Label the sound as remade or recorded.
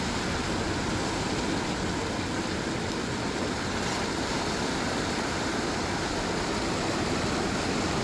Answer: recorded